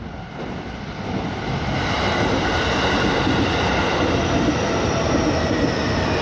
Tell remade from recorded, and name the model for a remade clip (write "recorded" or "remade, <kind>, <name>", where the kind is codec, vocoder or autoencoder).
recorded